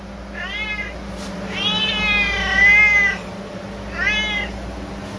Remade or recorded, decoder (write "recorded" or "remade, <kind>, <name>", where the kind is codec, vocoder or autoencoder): recorded